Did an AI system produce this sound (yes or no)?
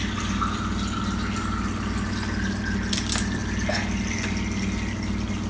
no